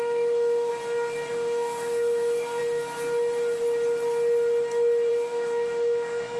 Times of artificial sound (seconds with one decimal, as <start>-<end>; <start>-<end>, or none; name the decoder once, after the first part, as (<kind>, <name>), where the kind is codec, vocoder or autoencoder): 0.0-0.7 (autoencoder, DAC-VAE); 1.3-2.6; 5.1-6.4